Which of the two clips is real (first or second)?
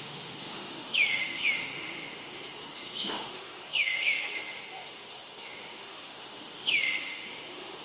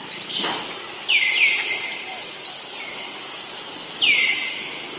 second